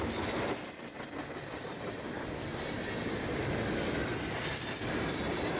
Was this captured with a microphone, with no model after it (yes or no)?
yes